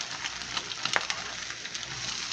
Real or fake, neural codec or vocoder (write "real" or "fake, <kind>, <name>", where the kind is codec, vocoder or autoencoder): real